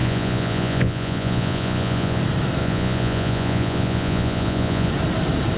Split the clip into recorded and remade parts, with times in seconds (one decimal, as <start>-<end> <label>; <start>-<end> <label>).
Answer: 0.0-2.2 remade; 2.2-2.6 recorded; 2.6-4.9 remade; 4.9-5.6 recorded